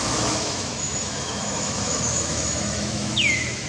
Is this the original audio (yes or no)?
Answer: no